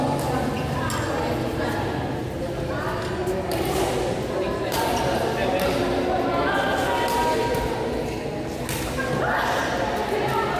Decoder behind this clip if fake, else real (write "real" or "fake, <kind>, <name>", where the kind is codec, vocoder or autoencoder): real